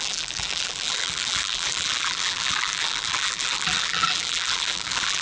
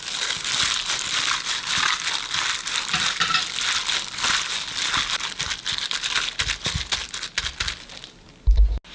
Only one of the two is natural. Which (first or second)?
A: second